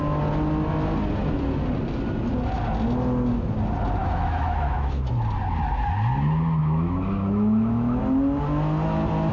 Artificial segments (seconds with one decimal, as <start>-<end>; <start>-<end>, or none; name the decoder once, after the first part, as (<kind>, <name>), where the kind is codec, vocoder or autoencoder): 4.0-5.1 (autoencoder, DAC-VAE); 6.6-8.0